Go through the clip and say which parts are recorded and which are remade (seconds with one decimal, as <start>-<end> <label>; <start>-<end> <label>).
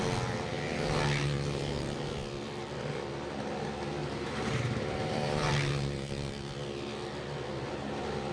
0.0-4.0 recorded; 4.0-5.5 remade; 5.5-8.3 recorded